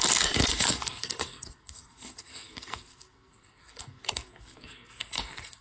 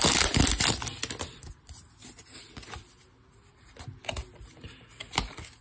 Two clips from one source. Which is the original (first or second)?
second